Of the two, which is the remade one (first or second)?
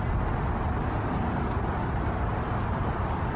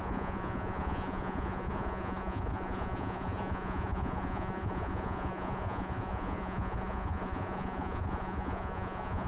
second